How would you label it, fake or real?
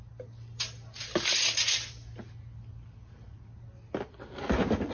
real